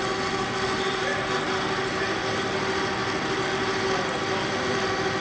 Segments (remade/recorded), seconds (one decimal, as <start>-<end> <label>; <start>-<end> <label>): 0.0-5.2 recorded